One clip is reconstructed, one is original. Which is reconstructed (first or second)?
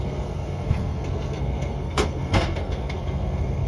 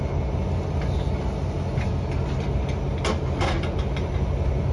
first